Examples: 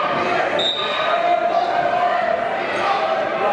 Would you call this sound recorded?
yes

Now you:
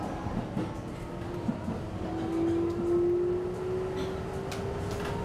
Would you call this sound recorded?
yes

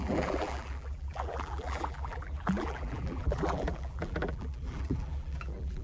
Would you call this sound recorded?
no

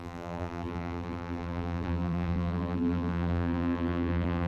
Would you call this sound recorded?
no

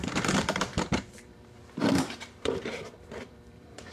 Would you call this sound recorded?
no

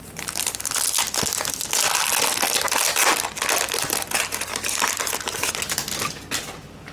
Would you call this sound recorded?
yes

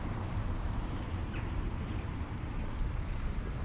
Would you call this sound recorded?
no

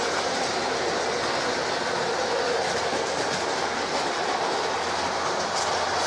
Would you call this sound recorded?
yes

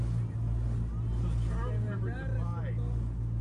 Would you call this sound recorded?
yes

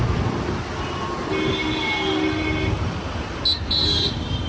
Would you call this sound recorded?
yes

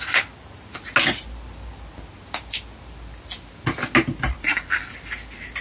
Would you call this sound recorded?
yes